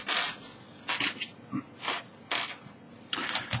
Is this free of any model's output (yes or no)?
yes